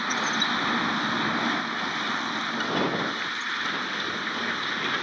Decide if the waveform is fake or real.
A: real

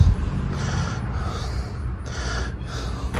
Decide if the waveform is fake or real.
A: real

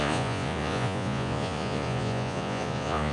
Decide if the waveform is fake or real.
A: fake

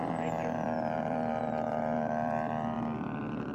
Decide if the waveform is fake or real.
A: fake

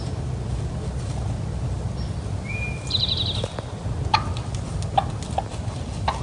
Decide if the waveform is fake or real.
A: real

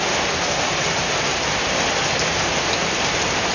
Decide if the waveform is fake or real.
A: real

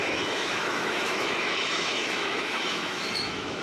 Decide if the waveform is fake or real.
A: fake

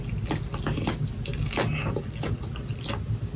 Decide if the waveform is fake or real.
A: real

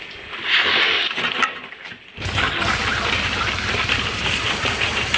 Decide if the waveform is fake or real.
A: real